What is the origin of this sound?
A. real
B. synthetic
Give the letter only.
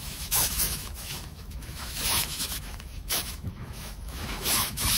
B